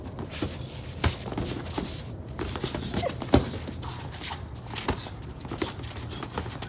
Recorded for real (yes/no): yes